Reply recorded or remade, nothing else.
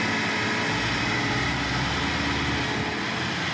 recorded